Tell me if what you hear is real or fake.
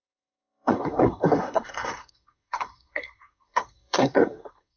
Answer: fake